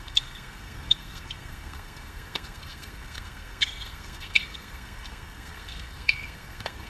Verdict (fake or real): fake